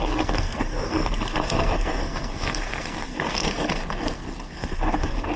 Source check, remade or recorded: remade